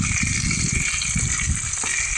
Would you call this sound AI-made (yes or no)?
no